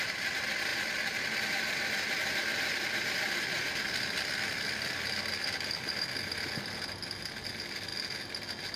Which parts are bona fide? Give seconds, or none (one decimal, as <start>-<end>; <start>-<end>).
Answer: 0.0-8.8